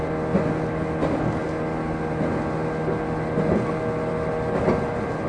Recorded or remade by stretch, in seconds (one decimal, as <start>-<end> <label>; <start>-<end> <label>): 0.0-5.3 recorded